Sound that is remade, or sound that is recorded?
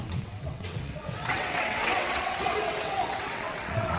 remade